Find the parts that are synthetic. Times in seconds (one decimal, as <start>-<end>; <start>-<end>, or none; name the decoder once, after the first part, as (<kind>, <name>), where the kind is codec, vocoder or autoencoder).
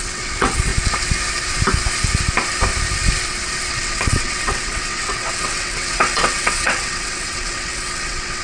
0.0-0.7 (vocoder, WaveNeXt); 3.7-8.4